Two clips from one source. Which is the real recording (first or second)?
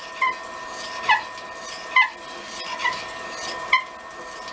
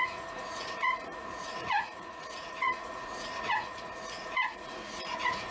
first